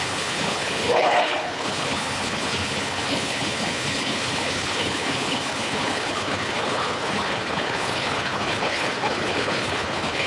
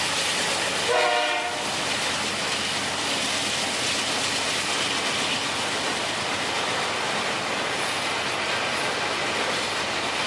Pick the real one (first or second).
second